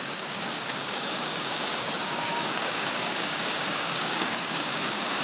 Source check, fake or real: fake